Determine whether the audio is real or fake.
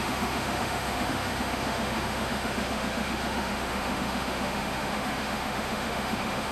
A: fake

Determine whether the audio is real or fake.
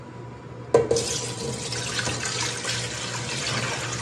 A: real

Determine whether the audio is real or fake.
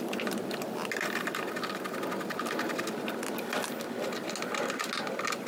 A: real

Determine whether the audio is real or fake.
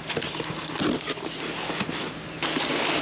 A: real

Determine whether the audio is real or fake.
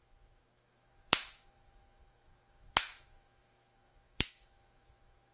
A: fake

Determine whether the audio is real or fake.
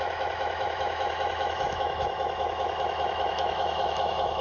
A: fake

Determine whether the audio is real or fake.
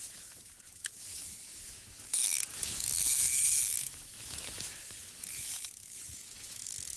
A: fake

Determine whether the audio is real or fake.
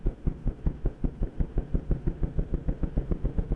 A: fake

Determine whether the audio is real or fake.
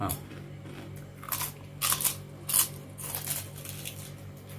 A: real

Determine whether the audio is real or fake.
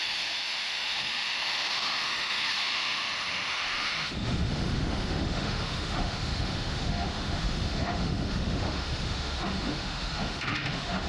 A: fake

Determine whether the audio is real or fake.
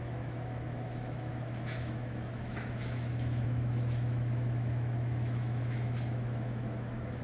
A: fake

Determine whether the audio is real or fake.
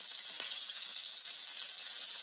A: real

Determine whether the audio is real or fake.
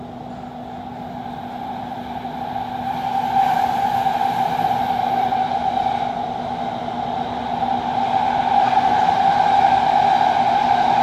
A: real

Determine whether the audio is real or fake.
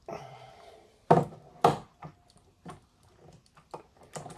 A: real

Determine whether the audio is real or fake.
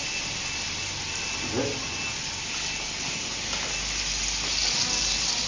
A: real